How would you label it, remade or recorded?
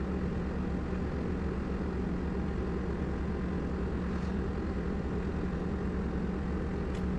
recorded